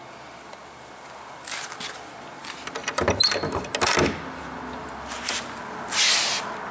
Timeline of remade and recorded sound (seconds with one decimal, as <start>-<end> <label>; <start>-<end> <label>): 0.0-6.7 recorded